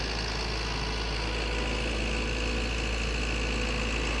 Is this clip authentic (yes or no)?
yes